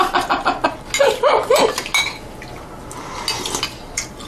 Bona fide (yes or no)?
yes